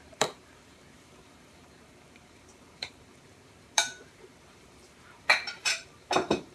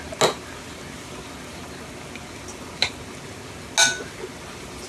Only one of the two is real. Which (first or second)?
second